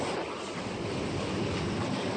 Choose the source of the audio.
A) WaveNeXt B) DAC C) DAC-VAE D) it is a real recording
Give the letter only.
D